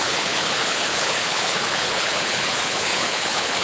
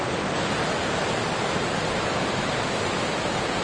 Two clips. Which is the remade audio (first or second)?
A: first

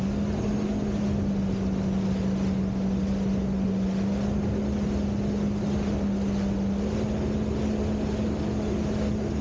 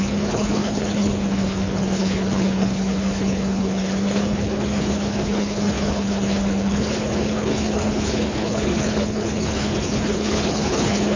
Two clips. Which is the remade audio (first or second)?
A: second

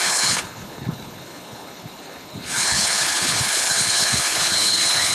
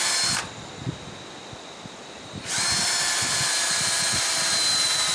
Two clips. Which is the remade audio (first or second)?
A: first